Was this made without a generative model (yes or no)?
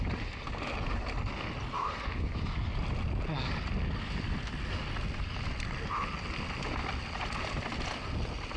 yes